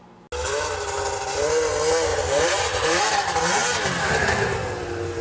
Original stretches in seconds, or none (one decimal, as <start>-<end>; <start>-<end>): 0.0-2.1; 3.0-5.2